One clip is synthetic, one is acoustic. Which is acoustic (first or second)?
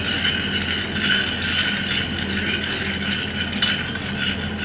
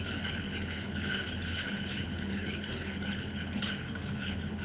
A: first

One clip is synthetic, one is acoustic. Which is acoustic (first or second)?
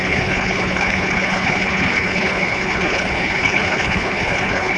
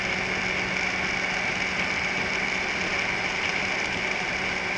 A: second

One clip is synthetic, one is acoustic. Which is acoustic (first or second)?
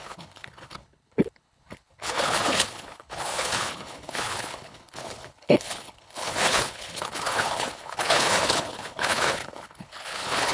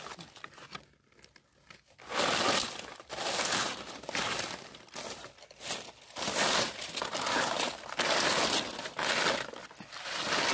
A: second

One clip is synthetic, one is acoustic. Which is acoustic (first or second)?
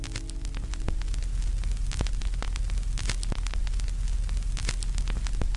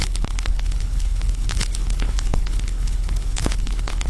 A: first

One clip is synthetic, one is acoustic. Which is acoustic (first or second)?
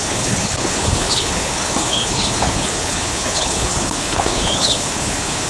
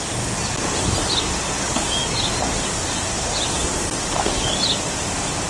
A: second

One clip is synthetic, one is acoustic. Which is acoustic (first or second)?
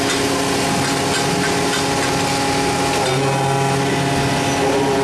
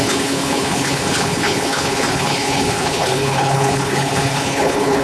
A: first